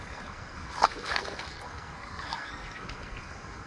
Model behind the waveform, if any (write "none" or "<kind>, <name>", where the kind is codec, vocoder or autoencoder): codec, SNAC